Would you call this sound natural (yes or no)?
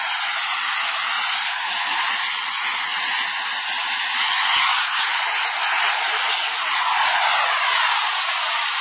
yes